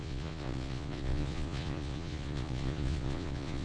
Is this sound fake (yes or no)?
yes